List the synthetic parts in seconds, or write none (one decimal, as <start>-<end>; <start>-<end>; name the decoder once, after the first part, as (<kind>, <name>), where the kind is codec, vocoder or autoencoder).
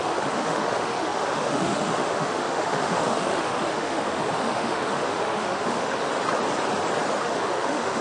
0.0-6.1 (autoencoder, DAC-VAE); 7.2-8.0